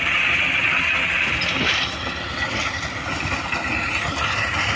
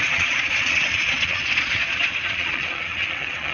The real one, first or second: first